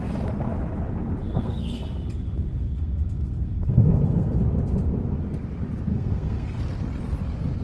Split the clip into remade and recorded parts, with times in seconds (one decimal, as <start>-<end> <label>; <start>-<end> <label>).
0.0-1.2 recorded; 1.2-1.8 remade; 1.8-2.5 recorded; 2.5-4.4 remade; 4.4-5.9 recorded; 5.9-6.6 remade; 6.6-7.6 recorded